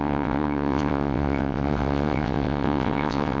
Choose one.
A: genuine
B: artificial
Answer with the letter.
B